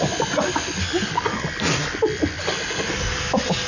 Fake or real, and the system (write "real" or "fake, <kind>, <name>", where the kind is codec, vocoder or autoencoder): real